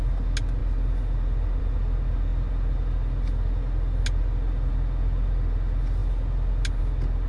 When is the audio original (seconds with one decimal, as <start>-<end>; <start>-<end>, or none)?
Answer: 0.0-7.3